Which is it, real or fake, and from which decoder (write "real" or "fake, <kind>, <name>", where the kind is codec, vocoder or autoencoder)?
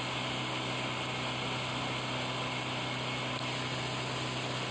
real